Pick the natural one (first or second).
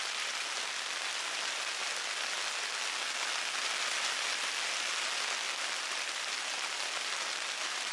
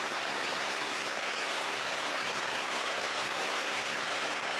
first